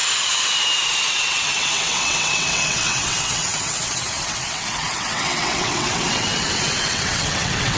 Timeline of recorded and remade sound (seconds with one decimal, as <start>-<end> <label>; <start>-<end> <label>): 0.0-1.1 recorded; 1.1-7.8 remade